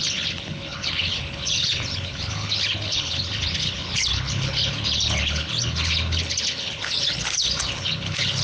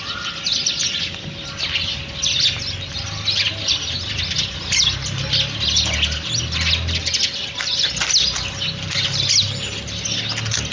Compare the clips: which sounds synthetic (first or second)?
first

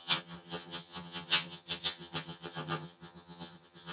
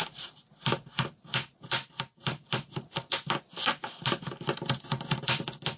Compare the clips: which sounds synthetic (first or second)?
first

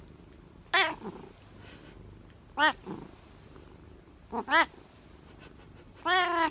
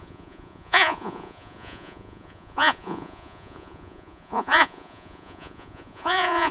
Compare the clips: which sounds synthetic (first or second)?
second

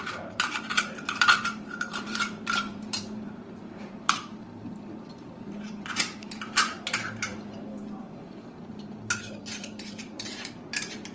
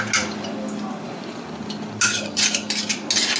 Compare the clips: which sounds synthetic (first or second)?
first